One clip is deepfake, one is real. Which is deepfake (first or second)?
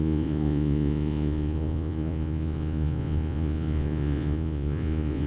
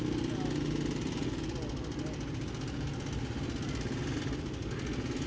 first